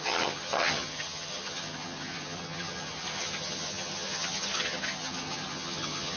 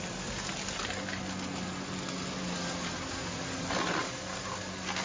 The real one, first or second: second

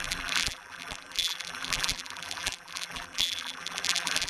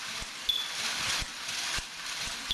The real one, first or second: second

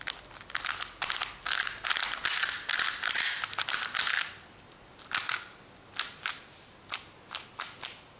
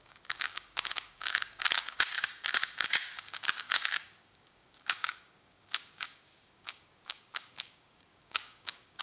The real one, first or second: first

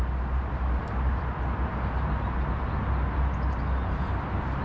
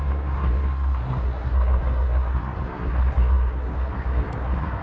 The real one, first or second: first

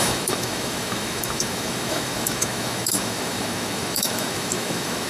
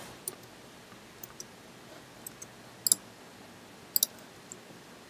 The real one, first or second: second